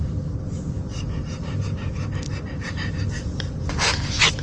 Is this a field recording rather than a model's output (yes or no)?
yes